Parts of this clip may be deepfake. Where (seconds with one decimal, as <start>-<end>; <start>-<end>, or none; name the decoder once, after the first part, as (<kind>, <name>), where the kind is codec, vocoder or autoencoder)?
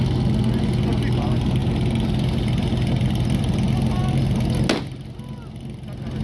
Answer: none